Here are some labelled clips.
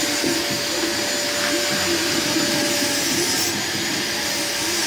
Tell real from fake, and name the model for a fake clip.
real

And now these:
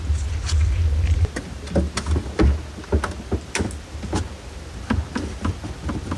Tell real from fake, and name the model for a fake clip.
real